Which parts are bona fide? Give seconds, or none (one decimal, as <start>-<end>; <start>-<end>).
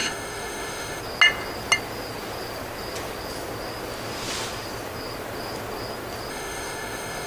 1.0-6.3